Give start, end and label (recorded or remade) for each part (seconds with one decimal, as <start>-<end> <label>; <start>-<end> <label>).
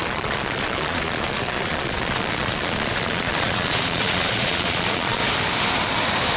0.0-5.2 remade; 5.2-6.4 recorded